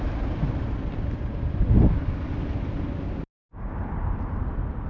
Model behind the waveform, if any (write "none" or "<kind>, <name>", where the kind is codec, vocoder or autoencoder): none